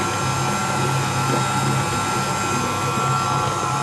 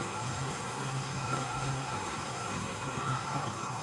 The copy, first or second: second